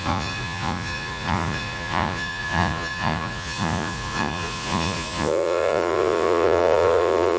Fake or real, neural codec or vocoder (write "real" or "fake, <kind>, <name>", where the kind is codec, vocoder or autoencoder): fake, vocoder, Vocos